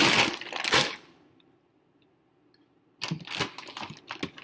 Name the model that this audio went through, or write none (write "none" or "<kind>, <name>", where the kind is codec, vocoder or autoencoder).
none